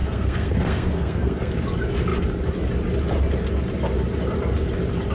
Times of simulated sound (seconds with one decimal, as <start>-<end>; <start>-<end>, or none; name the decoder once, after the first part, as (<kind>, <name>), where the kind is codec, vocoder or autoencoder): 0.0-1.5 (codec, SNAC)